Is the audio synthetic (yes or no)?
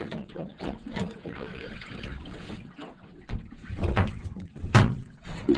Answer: yes